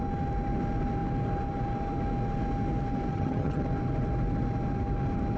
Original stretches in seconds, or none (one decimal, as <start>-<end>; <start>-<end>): 0.0-3.1; 3.6-5.4

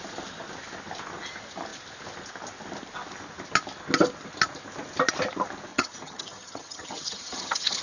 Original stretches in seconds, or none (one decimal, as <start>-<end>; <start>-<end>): 0.0-5.7

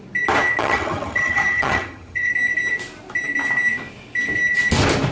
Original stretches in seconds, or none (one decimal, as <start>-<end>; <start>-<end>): 0.0-0.6; 2.3-5.1